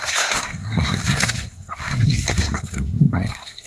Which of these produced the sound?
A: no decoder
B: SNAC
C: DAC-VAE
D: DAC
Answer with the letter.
B